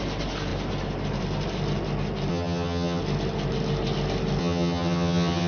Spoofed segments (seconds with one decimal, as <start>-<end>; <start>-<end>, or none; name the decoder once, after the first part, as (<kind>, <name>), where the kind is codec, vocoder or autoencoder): 2.3-3.0 (vocoder, HiFi-GAN); 4.4-5.5